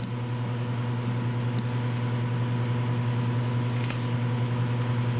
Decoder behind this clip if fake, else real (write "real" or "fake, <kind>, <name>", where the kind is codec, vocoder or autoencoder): real